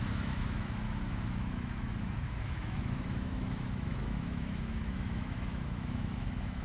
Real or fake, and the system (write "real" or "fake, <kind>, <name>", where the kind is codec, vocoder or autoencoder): fake, autoencoder, DAC-VAE